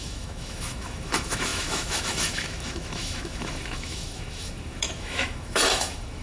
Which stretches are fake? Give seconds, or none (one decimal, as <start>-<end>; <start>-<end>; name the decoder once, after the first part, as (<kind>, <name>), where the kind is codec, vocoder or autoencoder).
0.0-6.2 (autoencoder, DAC-VAE)